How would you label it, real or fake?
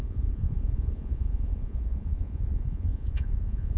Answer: fake